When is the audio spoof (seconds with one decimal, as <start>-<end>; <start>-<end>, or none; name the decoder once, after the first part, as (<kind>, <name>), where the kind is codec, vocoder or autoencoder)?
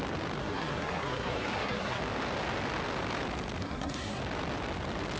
0.4-2.0 (codec, SNAC); 3.6-4.2